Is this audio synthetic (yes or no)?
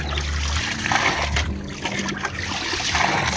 no